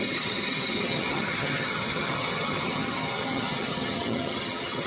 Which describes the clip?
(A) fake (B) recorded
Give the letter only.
A